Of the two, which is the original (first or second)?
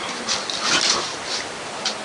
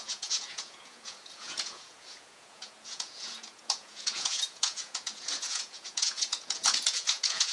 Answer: first